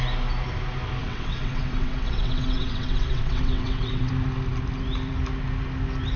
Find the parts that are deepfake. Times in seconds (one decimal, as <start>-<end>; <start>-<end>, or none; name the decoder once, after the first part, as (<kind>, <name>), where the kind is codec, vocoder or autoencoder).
1.0-4.1 (vocoder, WaveNeXt)